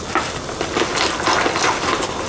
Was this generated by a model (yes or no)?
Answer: no